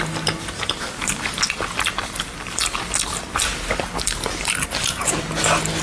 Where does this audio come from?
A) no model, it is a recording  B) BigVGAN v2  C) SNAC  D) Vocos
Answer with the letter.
A